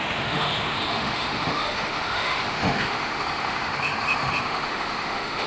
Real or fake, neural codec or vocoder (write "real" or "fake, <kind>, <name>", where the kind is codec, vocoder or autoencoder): fake, autoencoder, DAC-VAE